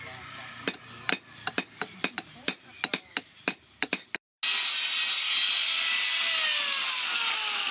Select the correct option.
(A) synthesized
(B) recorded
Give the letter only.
B